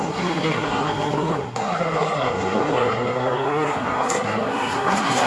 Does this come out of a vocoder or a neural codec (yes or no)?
yes